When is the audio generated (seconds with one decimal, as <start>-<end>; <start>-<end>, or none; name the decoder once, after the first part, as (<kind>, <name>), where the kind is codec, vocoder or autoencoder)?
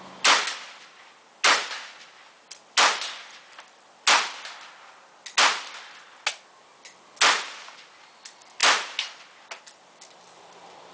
none